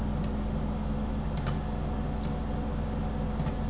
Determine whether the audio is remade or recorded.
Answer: recorded